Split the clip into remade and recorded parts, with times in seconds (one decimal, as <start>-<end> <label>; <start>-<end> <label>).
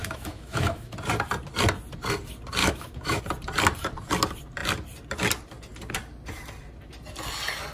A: 0.0-0.9 remade; 0.9-2.6 recorded; 2.6-3.2 remade; 3.2-7.7 recorded